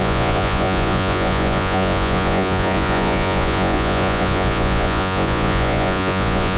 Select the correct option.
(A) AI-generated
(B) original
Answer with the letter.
A